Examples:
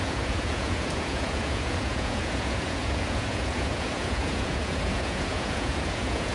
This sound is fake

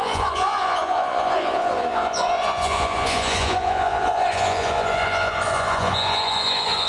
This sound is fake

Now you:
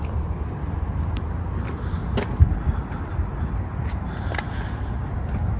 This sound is real